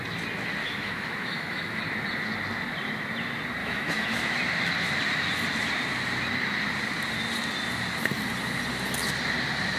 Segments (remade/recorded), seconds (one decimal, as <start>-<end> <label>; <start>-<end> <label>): 0.0-0.6 recorded; 0.6-1.8 remade; 1.8-3.6 recorded; 3.6-4.3 remade; 4.3-9.8 recorded